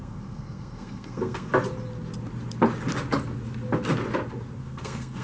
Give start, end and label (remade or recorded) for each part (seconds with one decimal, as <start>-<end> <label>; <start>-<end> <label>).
0.0-1.5 remade; 1.5-4.6 recorded; 4.6-5.2 remade